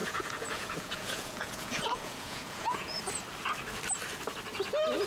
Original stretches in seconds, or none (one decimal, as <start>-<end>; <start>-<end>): 3.0-5.1